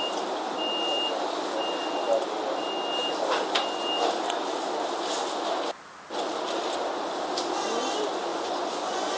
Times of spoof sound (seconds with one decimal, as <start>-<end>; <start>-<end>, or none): 8.3-9.2